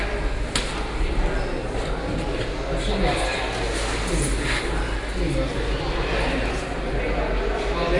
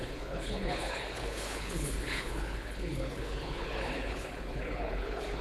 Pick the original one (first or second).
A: first